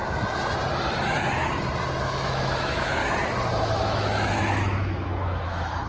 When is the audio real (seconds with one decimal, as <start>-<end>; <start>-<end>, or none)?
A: 0.0-2.0; 3.0-3.5